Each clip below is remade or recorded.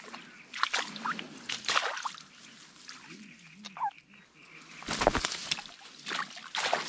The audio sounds recorded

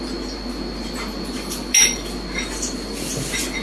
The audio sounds recorded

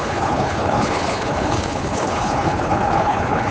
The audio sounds remade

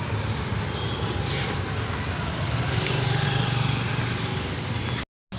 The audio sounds recorded